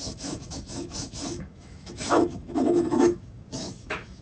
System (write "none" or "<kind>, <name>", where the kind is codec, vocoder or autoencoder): autoencoder, DAC-VAE